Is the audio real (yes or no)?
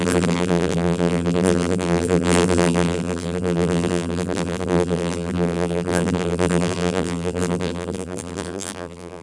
no